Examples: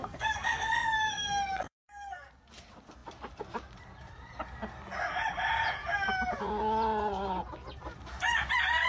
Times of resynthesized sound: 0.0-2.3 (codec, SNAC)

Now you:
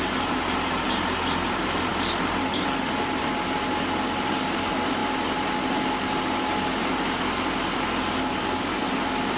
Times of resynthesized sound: none

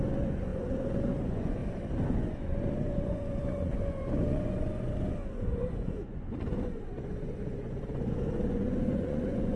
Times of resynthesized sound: 0.0-1.6 (vocoder, Vocos); 2.1-9.6

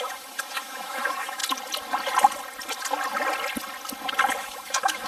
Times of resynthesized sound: 0.0-1.4 (autoencoder, DAC-VAE); 4.4-5.1

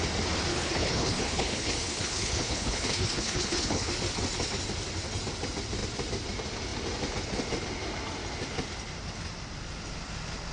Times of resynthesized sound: 0.5-3.9 (codec, HILCodec)

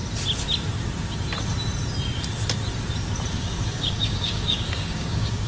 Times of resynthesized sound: 3.3-5.5 (codec, DAC)

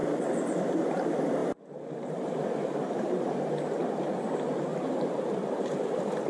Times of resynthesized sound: 1.4-3.5 (vocoder, BigVGAN v2); 4.7-6.3

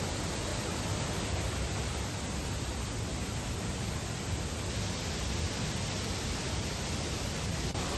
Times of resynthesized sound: none